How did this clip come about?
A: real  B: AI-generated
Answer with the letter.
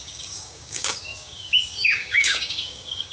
B